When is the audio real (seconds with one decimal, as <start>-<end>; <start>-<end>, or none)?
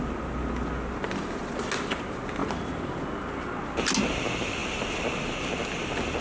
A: 0.0-6.2